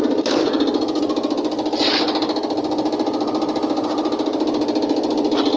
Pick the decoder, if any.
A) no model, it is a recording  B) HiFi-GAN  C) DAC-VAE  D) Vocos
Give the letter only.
A